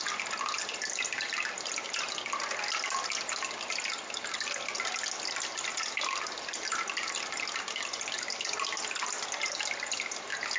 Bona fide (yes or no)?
yes